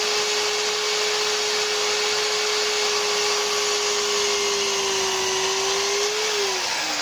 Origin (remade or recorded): recorded